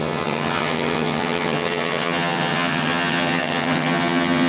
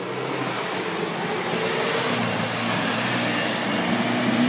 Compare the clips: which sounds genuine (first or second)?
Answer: second